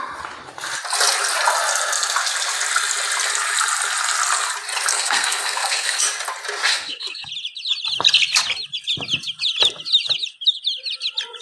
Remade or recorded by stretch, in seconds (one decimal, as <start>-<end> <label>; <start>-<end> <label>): 0.0-4.9 recorded; 4.9-6.0 remade; 6.0-6.7 recorded; 6.7-7.3 remade; 7.3-11.4 recorded